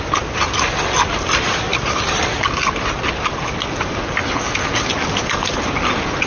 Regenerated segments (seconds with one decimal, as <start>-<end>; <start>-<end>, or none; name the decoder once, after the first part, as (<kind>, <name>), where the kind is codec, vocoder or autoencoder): none